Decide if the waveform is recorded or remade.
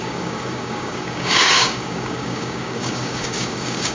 remade